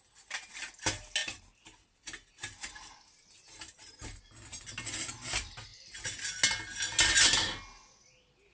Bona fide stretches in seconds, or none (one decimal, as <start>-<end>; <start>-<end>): 0.0-8.5